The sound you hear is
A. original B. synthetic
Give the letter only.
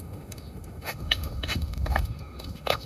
B